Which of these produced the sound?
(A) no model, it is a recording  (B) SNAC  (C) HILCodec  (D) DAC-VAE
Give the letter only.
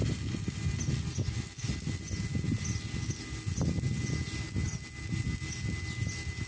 A